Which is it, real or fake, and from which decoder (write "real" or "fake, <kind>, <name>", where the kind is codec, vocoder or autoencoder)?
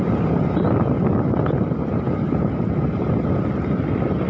real